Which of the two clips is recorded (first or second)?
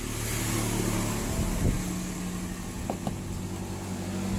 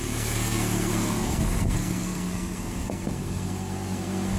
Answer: first